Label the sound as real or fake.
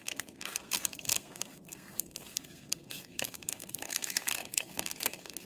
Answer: fake